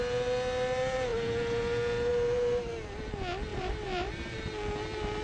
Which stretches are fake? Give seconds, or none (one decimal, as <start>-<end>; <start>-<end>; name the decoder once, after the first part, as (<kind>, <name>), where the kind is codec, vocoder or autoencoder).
2.1-2.7 (vocoder, BigVGAN v2); 3.5-4.4

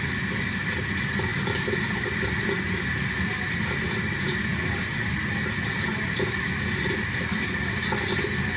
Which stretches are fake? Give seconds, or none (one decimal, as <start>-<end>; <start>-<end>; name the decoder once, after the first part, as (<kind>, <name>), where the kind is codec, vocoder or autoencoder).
1.3-2.5 (vocoder, BigVGAN v2)